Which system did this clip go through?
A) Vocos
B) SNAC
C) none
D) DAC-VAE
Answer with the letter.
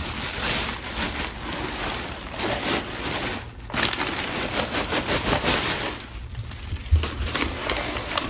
C